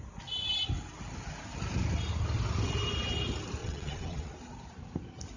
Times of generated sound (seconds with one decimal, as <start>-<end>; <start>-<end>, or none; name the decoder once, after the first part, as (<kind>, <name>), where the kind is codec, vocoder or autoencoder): 3.6-4.3 (vocoder, WaveNeXt)